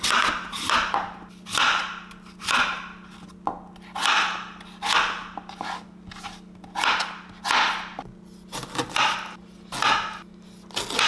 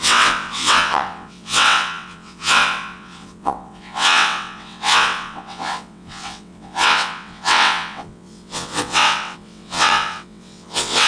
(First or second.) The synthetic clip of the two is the second